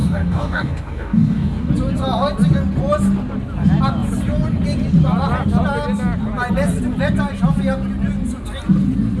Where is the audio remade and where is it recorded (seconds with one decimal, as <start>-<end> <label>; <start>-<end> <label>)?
0.0-1.7 remade; 1.7-9.2 recorded

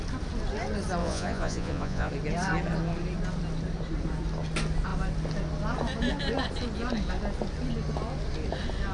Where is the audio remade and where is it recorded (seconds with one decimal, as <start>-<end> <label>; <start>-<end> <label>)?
0.0-1.0 recorded; 1.0-2.1 remade; 2.1-8.9 recorded

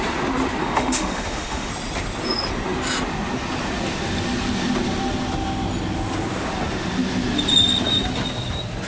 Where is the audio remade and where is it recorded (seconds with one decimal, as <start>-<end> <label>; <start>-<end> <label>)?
0.0-0.6 recorded; 0.6-1.7 remade; 1.7-8.9 recorded

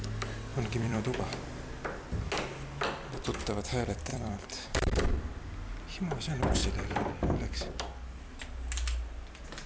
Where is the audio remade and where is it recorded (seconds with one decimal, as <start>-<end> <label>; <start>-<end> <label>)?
0.0-0.5 recorded; 0.5-1.2 remade; 1.2-4.1 recorded; 4.1-5.6 remade; 5.6-9.7 recorded

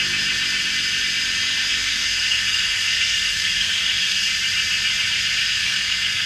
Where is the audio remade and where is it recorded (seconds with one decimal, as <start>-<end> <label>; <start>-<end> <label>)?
0.0-1.7 recorded; 1.7-4.3 remade; 4.3-5.4 recorded; 5.4-6.3 remade

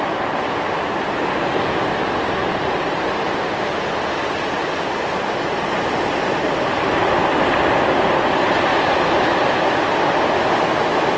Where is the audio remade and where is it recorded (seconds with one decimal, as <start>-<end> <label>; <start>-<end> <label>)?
0.0-2.4 recorded; 2.4-3.0 remade; 3.0-11.2 recorded